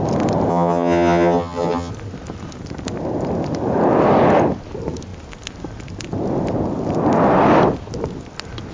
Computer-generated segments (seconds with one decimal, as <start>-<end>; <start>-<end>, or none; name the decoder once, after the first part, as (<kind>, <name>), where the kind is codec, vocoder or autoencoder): 0.5-1.9 (vocoder, HiFi-GAN)